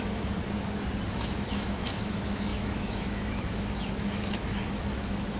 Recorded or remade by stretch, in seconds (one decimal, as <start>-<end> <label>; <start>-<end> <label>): 0.0-0.4 remade; 0.4-1.2 recorded; 1.2-5.4 remade